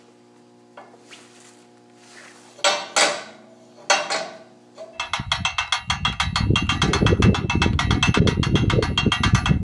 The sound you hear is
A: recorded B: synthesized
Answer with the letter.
A